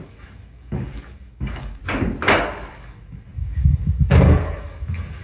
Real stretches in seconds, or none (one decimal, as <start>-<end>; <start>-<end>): 1.8-2.7